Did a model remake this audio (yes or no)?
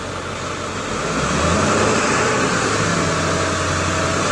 no